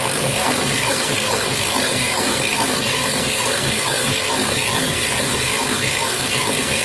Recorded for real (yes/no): no